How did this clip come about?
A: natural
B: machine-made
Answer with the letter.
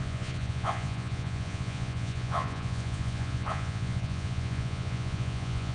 B